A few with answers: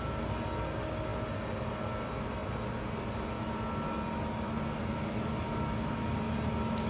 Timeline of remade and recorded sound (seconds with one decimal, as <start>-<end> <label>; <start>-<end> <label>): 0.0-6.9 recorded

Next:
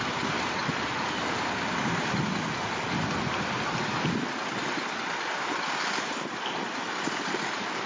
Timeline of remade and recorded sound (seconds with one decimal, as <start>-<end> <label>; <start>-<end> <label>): 0.0-7.9 recorded

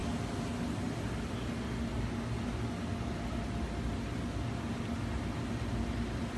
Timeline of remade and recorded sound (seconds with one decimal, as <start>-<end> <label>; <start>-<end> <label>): 0.0-6.4 recorded

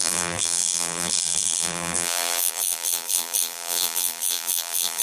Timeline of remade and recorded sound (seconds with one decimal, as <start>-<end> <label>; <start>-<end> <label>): 0.0-5.0 remade

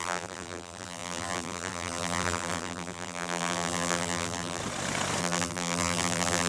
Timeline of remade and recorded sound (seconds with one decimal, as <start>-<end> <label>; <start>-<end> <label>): 0.0-4.6 remade; 4.6-5.2 recorded; 5.2-6.5 remade

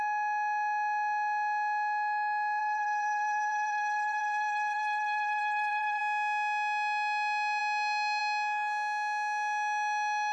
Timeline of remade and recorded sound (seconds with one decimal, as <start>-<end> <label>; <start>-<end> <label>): 0.0-2.6 recorded; 2.6-6.0 remade; 6.0-10.3 recorded

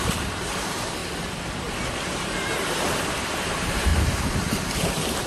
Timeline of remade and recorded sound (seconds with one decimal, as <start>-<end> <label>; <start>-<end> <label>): 0.0-1.0 remade; 1.0-1.9 recorded; 1.9-5.3 remade